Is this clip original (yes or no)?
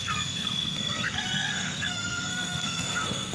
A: no